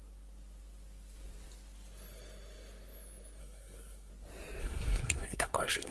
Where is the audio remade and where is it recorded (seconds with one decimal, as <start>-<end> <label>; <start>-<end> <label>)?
0.0-3.4 recorded; 3.4-4.1 remade; 4.1-4.6 recorded; 4.6-5.9 remade

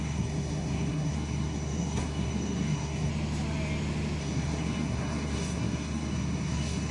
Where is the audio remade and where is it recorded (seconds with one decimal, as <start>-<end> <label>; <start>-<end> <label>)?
0.0-3.1 remade; 3.1-4.2 recorded; 4.2-6.9 remade